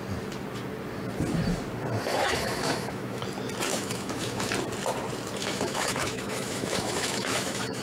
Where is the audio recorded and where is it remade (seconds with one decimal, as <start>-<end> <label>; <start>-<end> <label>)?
0.0-2.1 recorded; 2.1-3.2 remade; 3.2-3.7 recorded; 3.7-4.5 remade; 4.5-5.4 recorded; 5.4-7.8 remade